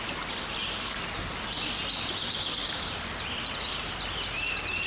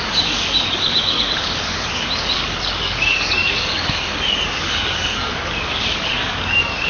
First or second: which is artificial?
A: second